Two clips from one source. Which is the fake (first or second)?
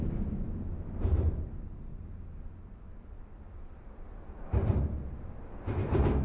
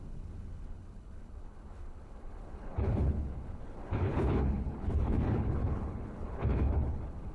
second